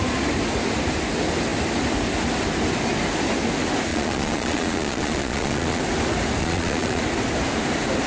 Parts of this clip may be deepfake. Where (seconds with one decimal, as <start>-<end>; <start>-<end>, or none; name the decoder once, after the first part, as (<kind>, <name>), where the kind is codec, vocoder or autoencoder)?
3.9-5.8 (vocoder, Vocos); 6.4-7.0